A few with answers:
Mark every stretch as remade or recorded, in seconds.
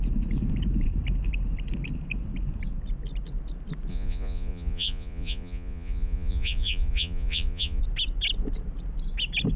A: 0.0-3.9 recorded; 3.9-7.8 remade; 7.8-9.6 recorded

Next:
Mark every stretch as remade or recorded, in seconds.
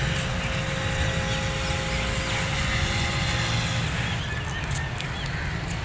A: 0.0-2.5 recorded; 2.5-3.3 remade; 3.3-5.8 recorded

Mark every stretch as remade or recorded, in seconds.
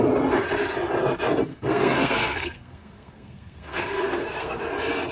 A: 0.0-1.5 recorded; 1.5-4.6 remade; 4.6-5.1 recorded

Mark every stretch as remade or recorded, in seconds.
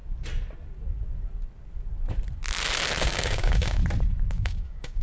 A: 0.0-3.0 recorded; 3.0-3.8 remade; 3.8-4.3 recorded; 4.3-5.0 remade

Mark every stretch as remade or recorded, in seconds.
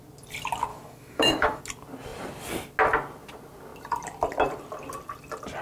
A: 0.0-0.7 recorded; 0.7-1.6 remade; 1.6-5.6 recorded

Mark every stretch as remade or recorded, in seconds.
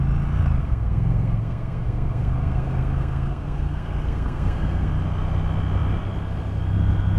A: 0.0-0.6 recorded; 0.6-4.9 remade; 4.9-7.2 recorded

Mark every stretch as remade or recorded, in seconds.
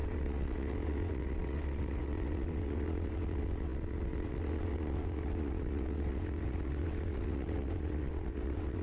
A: 0.0-8.8 remade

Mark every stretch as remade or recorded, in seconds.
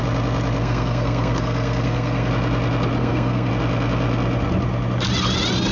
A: 0.0-0.6 recorded; 0.6-2.3 remade; 2.3-3.0 recorded; 3.0-3.5 remade; 3.5-5.7 recorded